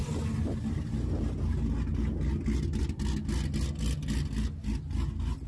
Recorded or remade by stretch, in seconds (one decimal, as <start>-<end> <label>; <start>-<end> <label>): 0.0-5.5 recorded